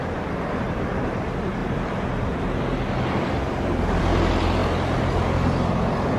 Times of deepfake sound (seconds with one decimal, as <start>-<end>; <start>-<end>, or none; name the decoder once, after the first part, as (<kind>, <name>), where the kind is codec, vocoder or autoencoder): 1.6-4.0 (vocoder, BigVGAN v2); 4.6-6.2